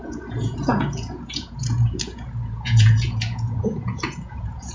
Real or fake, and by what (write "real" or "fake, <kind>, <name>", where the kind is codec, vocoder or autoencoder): fake, vocoder, Vocos